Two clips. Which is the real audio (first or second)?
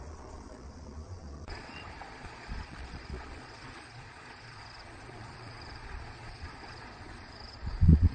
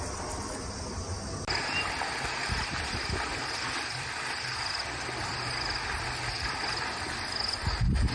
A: second